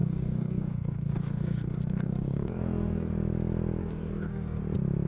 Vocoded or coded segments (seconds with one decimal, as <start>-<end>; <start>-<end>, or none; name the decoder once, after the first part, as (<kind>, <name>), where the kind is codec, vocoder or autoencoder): 0.0-3.1 (codec, DAC); 3.8-4.6